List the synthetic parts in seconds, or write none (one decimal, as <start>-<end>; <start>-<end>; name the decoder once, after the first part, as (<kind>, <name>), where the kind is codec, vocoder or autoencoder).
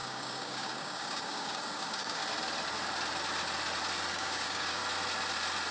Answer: 0.0-2.2 (codec, DAC); 4.1-4.8